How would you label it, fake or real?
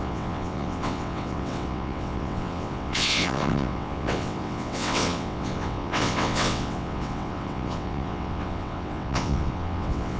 fake